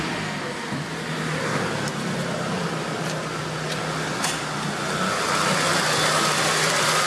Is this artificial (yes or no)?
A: no